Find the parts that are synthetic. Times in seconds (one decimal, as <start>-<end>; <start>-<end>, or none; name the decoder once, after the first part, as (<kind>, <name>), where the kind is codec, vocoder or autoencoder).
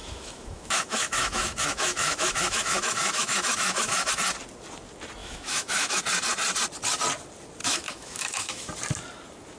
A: 0.0-4.1 (autoencoder, DAC-VAE); 5.2-6.0; 7.6-8.7